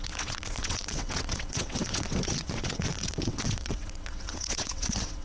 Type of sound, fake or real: fake